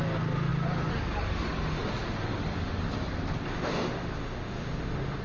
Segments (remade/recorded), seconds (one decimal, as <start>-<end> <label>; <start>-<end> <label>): 0.0-3.5 recorded; 3.5-5.2 remade